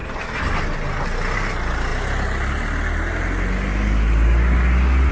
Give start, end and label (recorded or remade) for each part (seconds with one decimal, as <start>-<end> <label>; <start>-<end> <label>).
0.0-5.1 recorded